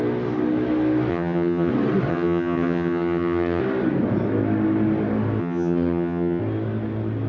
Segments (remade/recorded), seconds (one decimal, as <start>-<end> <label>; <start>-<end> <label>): 0.0-1.1 recorded; 1.1-1.7 remade; 1.7-2.1 recorded; 2.1-3.6 remade; 3.6-5.4 recorded; 5.4-6.4 remade; 6.4-7.3 recorded